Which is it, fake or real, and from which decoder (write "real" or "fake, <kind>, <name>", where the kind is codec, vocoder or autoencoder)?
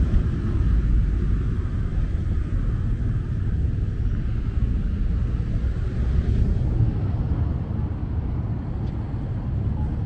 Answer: real